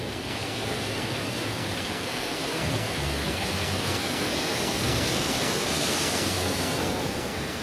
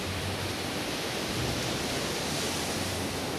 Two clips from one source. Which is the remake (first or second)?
first